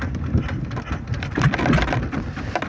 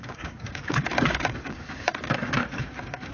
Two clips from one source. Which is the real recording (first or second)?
first